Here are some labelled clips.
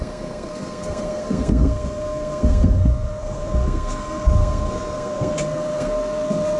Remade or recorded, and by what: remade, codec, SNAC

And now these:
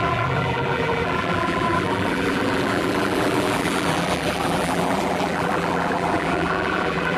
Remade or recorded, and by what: remade, vocoder, BigVGAN v2